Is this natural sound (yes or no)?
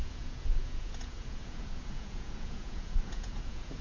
no